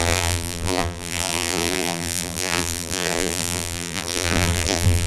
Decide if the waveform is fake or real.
fake